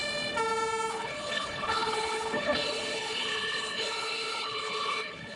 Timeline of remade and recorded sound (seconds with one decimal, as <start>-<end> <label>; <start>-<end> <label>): 0.0-0.9 recorded; 0.9-5.4 remade